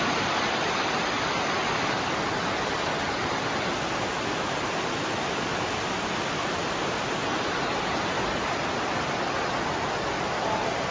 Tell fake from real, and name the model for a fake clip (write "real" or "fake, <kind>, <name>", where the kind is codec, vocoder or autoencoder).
real